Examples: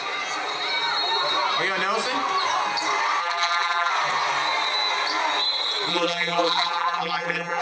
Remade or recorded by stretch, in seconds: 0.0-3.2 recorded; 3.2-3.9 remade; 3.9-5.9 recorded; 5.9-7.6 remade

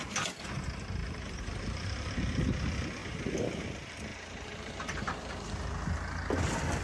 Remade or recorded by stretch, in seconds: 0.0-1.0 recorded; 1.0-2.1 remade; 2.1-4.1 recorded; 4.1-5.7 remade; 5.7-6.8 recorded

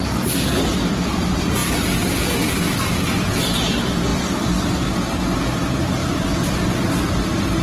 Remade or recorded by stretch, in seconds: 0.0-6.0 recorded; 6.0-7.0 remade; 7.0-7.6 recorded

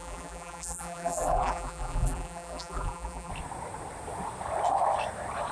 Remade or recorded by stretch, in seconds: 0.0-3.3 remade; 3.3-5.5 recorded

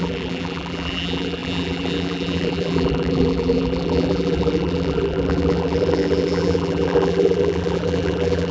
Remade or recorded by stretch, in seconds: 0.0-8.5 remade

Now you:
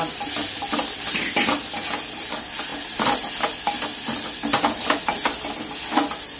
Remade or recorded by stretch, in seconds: 0.0-6.4 recorded